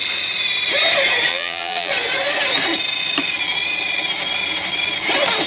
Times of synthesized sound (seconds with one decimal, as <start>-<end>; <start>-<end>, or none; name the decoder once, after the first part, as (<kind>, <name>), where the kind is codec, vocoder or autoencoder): 1.3-1.9 (vocoder, BigVGAN v2)